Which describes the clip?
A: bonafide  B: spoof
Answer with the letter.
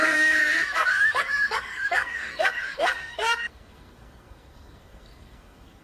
B